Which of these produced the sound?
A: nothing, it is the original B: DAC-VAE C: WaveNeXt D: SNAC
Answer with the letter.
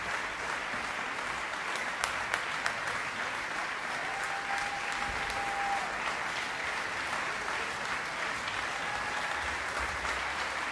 A